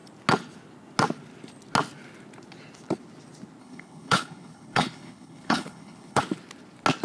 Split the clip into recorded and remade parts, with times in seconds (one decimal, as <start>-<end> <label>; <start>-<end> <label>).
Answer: 0.0-3.6 recorded; 3.6-6.2 remade; 6.2-7.0 recorded